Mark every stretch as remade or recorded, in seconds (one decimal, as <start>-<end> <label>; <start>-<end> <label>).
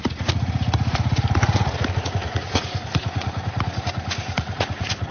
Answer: 0.0-5.1 remade